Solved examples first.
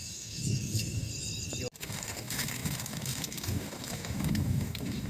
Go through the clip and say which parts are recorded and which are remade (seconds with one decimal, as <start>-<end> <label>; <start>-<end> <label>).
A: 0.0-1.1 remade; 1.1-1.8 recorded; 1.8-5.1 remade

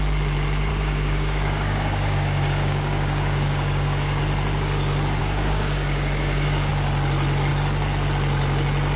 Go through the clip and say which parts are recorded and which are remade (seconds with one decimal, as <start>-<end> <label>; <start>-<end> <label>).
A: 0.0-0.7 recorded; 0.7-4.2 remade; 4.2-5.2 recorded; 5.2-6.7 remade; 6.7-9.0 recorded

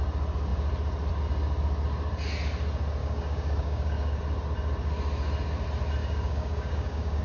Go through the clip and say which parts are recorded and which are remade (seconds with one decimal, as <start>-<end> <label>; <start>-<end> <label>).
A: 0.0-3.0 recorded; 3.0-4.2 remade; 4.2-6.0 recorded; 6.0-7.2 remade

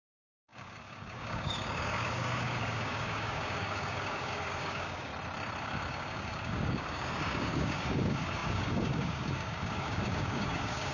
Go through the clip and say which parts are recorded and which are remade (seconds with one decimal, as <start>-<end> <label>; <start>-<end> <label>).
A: 0.0-5.1 remade; 5.1-5.6 recorded; 5.6-10.9 remade

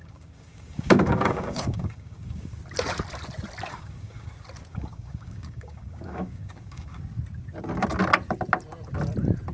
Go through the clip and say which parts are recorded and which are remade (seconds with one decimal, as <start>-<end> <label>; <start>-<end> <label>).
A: 0.0-2.6 remade; 2.6-3.7 recorded; 3.7-4.3 remade; 4.3-4.7 recorded; 4.7-7.0 remade; 7.0-9.5 recorded

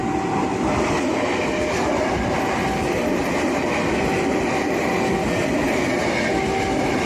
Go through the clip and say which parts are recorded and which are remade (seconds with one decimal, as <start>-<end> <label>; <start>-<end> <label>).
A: 0.0-7.1 recorded

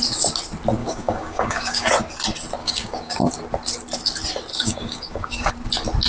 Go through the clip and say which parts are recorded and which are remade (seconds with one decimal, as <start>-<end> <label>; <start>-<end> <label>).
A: 0.0-0.8 recorded; 0.8-1.9 remade; 1.9-2.6 recorded; 2.6-3.3 remade; 3.3-4.5 recorded; 4.5-5.5 remade; 5.5-6.1 recorded

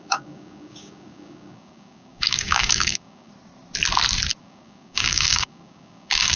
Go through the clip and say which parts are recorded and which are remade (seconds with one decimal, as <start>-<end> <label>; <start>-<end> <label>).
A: 0.0-3.3 remade; 3.3-4.4 recorded; 4.4-6.4 remade